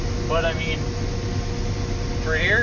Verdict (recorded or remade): recorded